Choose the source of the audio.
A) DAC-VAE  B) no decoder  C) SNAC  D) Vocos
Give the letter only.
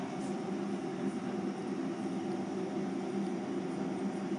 B